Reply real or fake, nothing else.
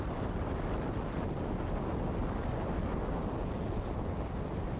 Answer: real